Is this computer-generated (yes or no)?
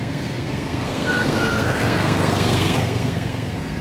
yes